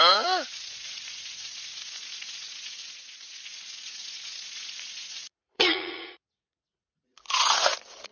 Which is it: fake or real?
fake